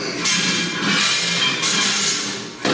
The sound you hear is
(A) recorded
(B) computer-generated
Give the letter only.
A